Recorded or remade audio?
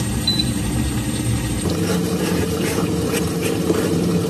remade